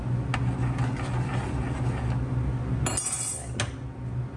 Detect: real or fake real